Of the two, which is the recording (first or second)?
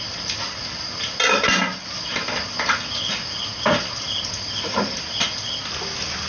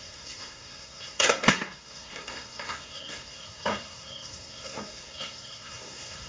first